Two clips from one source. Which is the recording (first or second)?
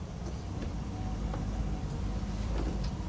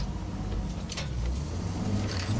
second